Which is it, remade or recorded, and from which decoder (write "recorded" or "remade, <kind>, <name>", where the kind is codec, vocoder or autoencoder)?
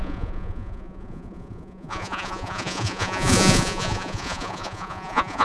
remade, vocoder, Vocos